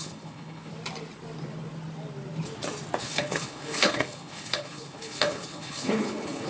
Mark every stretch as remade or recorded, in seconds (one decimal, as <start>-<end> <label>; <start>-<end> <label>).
0.0-0.7 remade; 0.7-3.0 recorded; 3.0-6.5 remade